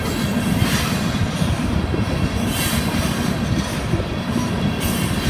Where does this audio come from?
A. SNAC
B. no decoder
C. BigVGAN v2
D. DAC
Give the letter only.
B